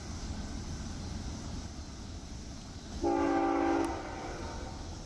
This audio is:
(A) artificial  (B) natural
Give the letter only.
B